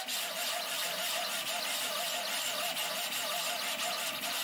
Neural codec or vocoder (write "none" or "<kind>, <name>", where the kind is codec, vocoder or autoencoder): none